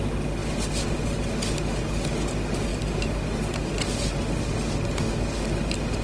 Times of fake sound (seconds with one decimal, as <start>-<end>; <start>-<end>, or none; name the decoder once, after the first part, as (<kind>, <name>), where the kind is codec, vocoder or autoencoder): none